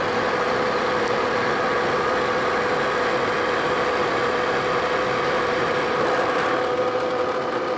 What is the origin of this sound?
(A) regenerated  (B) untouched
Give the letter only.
B